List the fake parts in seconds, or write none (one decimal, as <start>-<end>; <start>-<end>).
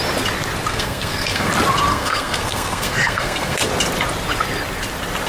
0.7-1.5; 1.9-3.7